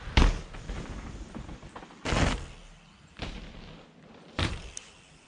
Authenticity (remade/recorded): recorded